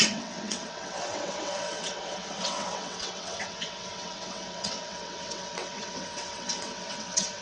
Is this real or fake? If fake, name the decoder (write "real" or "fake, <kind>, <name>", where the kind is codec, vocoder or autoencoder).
fake, vocoder, WaveNeXt